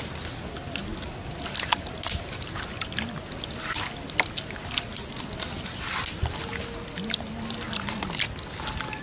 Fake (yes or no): no